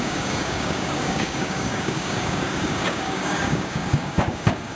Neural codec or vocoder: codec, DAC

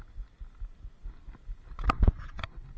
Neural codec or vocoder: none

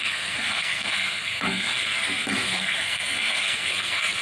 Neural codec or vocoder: codec, SNAC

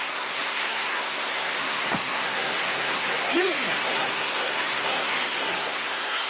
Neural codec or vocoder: codec, SNAC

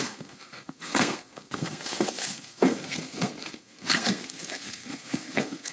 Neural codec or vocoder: codec, SNAC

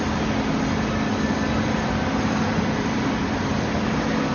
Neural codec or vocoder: none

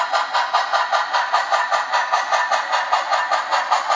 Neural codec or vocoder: none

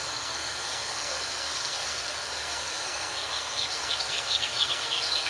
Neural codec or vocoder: codec, SNAC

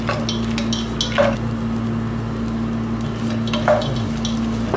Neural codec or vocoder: none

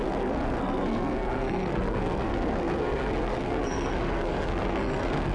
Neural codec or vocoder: codec, SNAC